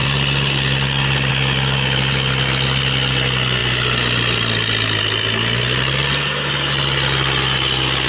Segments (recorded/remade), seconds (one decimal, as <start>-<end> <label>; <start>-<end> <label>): 0.0-8.1 recorded